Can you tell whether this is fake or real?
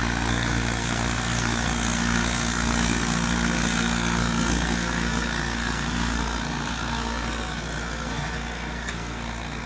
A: fake